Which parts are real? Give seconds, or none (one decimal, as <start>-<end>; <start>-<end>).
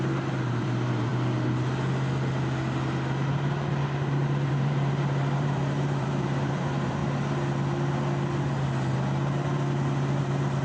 1.1-4.5; 7.0-10.2